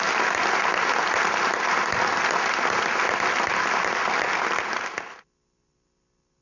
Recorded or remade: recorded